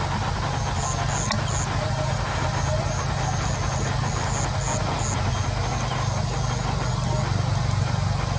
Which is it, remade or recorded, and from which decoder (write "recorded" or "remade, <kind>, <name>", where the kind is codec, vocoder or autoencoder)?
recorded